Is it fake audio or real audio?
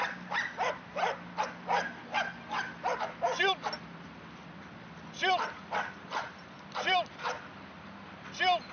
real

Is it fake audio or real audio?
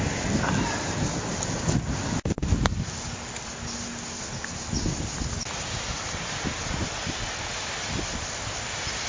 real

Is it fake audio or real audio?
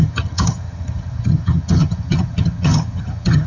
fake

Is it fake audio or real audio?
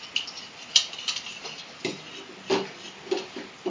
real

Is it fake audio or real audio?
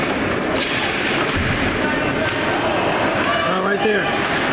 real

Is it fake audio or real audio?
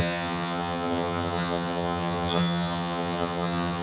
fake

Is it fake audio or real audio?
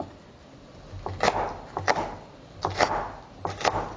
real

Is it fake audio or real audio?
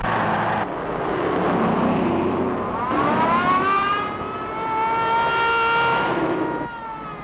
real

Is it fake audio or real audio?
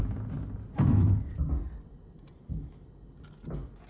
real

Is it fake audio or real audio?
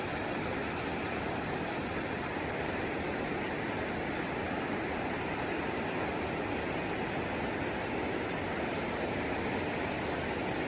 real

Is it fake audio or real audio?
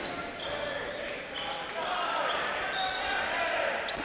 real